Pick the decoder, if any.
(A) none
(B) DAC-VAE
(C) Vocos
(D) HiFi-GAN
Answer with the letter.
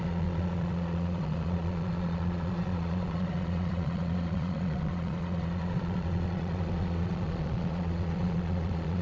C